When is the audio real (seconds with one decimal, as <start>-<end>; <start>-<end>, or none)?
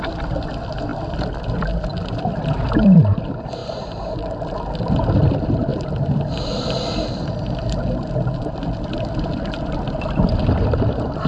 3.6-5.2